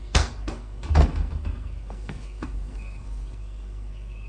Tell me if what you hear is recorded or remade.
remade